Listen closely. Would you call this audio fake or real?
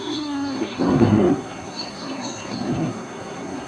fake